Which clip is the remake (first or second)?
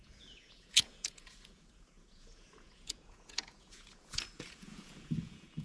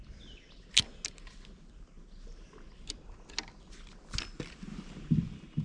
first